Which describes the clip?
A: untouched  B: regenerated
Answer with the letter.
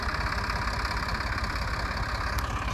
A